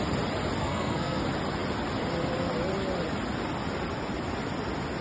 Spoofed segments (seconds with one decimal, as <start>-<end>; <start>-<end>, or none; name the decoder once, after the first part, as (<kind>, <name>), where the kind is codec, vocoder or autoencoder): 0.6-1.2 (codec, SNAC)